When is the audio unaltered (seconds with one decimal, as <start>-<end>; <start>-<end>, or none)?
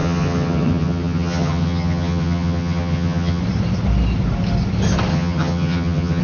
3.4-5.1